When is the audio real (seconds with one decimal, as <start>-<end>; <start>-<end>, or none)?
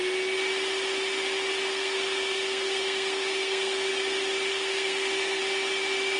0.0-1.7; 3.9-4.5; 5.4-6.2